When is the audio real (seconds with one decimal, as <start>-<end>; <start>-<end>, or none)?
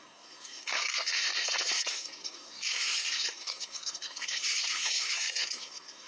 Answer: none